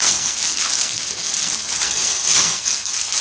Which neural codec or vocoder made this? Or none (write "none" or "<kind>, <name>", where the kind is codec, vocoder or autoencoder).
codec, SNAC